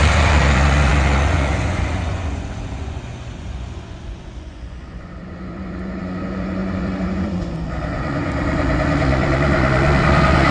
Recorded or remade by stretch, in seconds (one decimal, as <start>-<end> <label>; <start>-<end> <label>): 0.0-10.5 remade